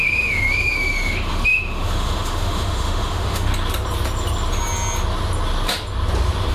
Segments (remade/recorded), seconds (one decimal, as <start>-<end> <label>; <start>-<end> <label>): 0.0-3.5 remade; 3.5-6.5 recorded